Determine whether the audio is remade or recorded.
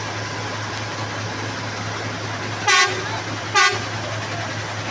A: recorded